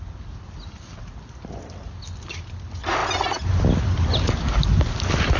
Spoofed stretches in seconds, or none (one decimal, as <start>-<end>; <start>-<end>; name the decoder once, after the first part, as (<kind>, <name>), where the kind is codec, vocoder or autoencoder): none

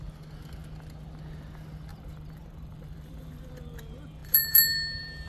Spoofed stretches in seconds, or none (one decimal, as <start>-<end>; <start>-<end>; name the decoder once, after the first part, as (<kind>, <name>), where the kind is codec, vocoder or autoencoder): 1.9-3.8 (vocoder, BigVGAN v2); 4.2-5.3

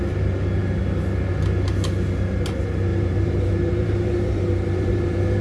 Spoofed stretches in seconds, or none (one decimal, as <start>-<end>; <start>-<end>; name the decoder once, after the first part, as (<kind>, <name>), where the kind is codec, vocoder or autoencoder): 2.9-5.4 (vocoder, BigVGAN v2)

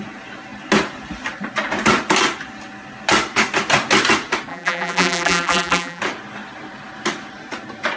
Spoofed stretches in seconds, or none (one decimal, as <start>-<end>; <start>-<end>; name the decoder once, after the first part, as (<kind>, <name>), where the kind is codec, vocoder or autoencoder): 4.5-6.0 (vocoder, BigVGAN v2)

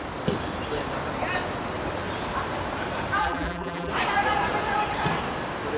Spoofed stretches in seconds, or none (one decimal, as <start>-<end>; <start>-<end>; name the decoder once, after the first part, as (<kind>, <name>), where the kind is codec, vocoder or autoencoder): 3.2-3.9 (vocoder, BigVGAN v2)